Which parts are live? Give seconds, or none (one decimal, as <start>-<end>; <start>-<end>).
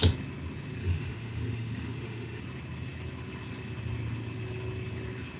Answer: 0.0-0.8; 2.4-5.4